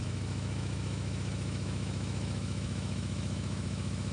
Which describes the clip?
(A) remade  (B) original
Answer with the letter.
A